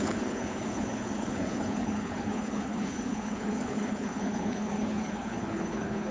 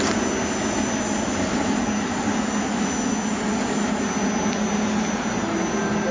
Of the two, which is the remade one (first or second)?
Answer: first